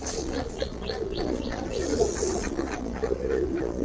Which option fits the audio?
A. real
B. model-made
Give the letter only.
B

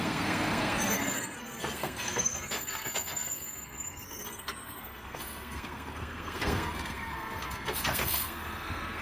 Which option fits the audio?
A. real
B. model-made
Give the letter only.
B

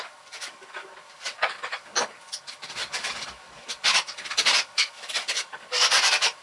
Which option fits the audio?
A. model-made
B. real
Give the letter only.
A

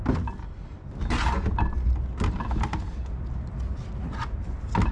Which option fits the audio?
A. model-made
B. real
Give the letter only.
B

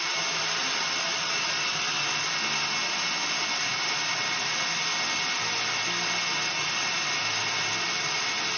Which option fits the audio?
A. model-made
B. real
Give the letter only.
B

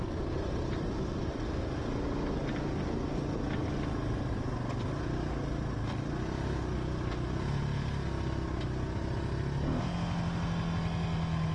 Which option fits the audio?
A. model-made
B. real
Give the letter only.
B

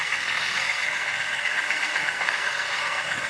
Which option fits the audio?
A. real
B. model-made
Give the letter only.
B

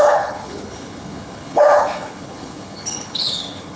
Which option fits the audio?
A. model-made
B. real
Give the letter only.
A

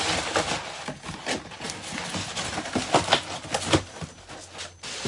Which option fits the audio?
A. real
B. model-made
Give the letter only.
A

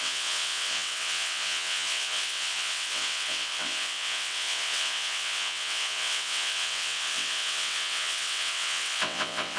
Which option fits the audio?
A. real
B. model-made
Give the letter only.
B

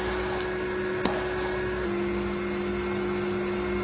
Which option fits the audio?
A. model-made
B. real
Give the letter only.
B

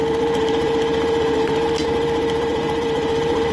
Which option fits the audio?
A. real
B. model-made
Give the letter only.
B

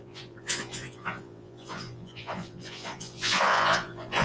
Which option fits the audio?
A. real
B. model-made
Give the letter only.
B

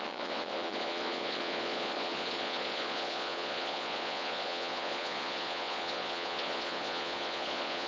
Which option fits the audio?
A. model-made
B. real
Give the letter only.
A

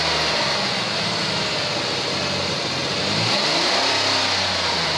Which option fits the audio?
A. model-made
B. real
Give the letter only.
B